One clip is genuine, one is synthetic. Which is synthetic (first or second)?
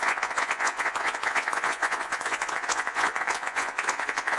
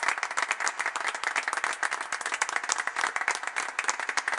first